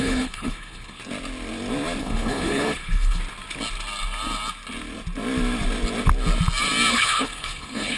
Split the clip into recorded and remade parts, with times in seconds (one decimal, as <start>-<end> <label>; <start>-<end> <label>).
0.0-1.0 remade; 1.0-2.0 recorded; 2.0-3.2 remade; 3.2-6.9 recorded; 6.9-8.0 remade